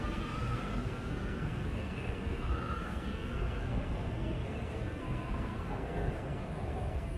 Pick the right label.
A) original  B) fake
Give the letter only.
B